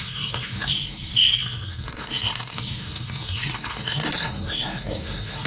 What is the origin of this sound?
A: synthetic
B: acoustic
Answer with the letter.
A